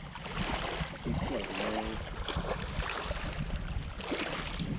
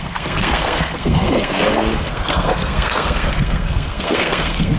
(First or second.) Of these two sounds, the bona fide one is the first